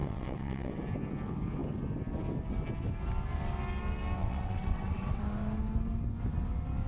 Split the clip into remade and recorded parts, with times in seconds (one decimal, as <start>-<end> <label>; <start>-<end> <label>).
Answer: 0.0-0.7 remade; 0.7-4.2 recorded; 4.2-5.2 remade; 5.2-6.9 recorded